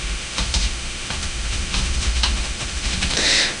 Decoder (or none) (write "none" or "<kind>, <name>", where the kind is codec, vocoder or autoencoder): autoencoder, DAC-VAE